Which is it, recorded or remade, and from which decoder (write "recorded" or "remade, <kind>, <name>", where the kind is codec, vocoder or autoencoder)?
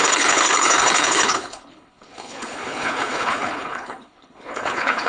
remade, codec, HILCodec